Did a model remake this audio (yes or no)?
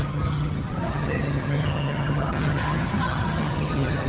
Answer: yes